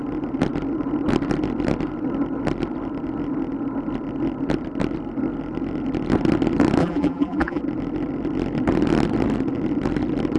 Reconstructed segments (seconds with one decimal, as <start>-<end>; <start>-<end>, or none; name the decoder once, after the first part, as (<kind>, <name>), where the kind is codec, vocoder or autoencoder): 6.8-7.6 (vocoder, BigVGAN v2)